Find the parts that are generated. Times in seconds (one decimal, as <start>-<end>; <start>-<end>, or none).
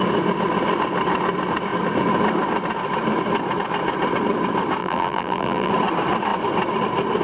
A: 4.8-5.7